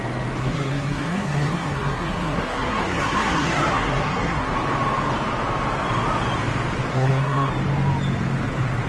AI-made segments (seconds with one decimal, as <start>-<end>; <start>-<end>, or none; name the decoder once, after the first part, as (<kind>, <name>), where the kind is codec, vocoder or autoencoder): 0.4-4.5 (codec, SNAC); 6.9-7.5